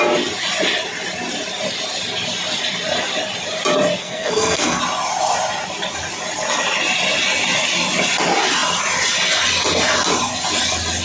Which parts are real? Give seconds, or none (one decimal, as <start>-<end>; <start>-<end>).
0.0-4.0; 4.8-11.0